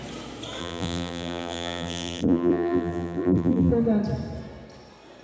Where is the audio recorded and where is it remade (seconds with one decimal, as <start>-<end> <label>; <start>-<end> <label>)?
0.0-0.6 recorded; 0.6-3.7 remade; 3.7-5.2 recorded